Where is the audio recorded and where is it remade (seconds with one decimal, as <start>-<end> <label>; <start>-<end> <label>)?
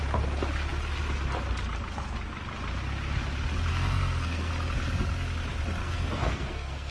0.0-3.7 recorded; 3.7-4.5 remade; 4.5-5.8 recorded; 5.8-6.9 remade